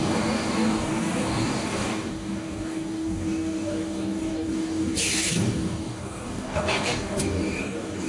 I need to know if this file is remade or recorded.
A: remade